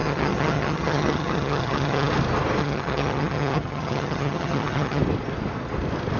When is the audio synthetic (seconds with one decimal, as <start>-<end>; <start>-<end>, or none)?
0.0-2.1; 2.6-5.0